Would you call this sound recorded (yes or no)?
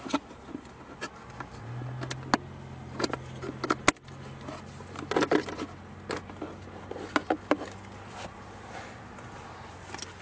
yes